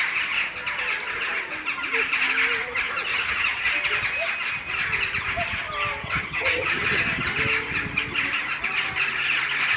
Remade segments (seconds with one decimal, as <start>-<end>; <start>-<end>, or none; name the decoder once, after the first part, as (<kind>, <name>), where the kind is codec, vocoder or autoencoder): 3.1-3.7 (vocoder, HiFi-GAN); 6.0-7.4